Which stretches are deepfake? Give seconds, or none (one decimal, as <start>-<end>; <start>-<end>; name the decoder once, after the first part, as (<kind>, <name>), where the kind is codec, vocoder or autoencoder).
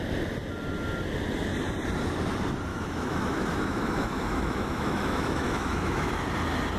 2.7-6.2 (autoencoder, DAC-VAE)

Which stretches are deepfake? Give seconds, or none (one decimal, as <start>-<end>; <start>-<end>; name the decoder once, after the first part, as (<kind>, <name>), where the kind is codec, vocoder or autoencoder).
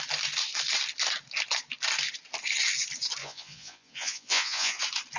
3.2-4.8 (vocoder, Vocos)